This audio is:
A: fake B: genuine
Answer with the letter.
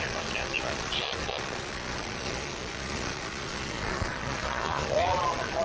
A